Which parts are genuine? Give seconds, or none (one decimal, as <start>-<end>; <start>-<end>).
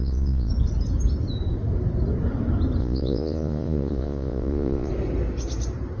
0.5-2.8; 4.9-6.0